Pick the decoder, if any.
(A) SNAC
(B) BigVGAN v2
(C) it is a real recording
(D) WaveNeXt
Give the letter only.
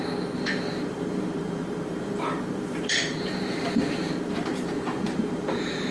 B